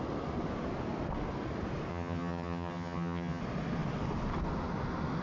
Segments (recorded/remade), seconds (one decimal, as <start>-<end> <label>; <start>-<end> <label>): 0.0-1.9 recorded; 1.9-3.4 remade; 3.4-5.2 recorded